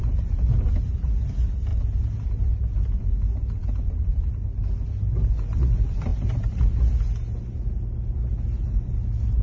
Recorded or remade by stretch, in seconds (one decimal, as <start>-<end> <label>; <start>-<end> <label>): 0.0-3.6 recorded; 3.6-4.3 remade; 4.3-9.4 recorded

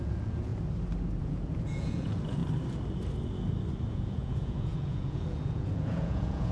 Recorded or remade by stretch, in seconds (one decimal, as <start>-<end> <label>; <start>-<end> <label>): 0.0-0.5 remade; 0.5-1.2 recorded; 1.2-2.4 remade; 2.4-3.9 recorded; 3.9-6.5 remade

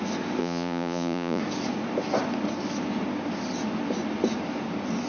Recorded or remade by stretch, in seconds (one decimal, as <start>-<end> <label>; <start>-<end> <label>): 0.0-0.4 recorded; 0.4-1.4 remade; 1.4-5.1 recorded

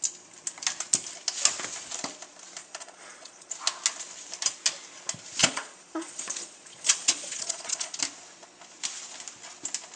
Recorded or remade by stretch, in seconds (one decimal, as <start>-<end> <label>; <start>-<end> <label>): 0.0-2.6 recorded; 2.6-3.5 remade; 3.5-5.4 recorded; 5.4-8.0 remade; 8.0-10.0 recorded

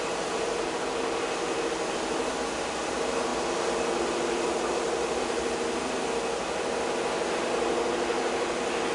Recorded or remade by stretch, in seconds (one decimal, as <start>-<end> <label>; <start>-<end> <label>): 0.0-8.9 recorded

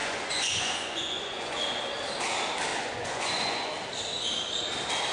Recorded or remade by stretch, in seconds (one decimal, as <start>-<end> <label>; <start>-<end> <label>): 0.0-1.8 remade; 1.8-2.7 recorded; 2.7-3.7 remade; 3.7-5.1 recorded

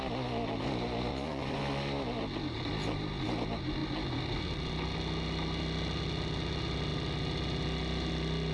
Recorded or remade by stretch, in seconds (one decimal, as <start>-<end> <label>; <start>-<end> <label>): 0.0-1.1 recorded; 1.1-1.6 remade; 1.6-8.5 recorded

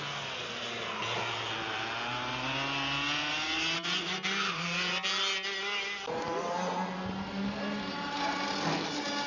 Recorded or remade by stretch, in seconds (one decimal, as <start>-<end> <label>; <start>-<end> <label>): 0.0-9.3 recorded